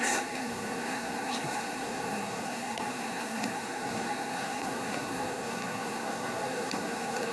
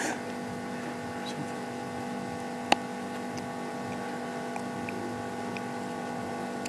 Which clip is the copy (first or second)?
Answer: first